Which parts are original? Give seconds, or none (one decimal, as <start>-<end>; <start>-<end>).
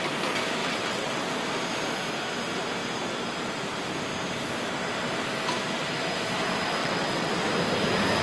0.0-0.6; 1.2-6.8; 7.3-8.2